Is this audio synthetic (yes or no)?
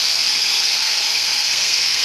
yes